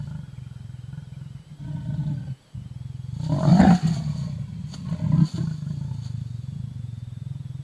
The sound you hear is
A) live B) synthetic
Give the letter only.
A